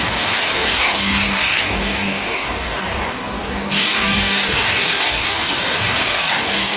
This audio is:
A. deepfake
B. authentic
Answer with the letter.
A